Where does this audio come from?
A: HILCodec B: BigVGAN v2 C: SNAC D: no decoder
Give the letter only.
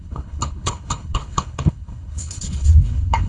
A